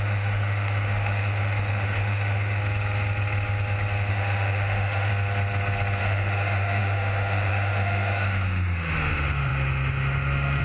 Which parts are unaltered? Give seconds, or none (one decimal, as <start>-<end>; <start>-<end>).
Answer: 2.6-4.1; 5.1-6.0